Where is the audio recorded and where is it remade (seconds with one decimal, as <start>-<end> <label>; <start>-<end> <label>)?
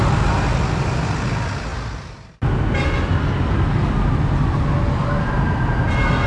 0.0-6.3 recorded